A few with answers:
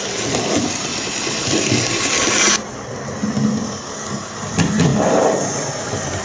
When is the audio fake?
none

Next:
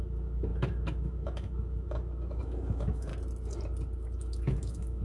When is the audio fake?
0.0-3.1 (autoencoder, DAC-VAE); 4.2-5.0

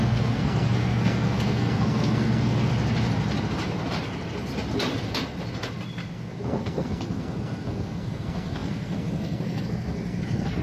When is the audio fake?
0.0-2.7 (codec, SNAC); 6.1-10.6

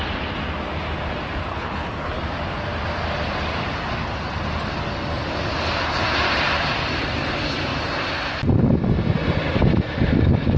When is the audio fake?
1.5-2.2 (codec, HILCodec)